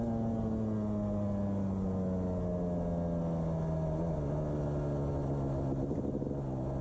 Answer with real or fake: real